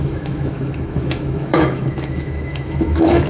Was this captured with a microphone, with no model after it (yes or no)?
no